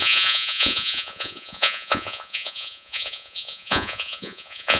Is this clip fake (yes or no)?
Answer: yes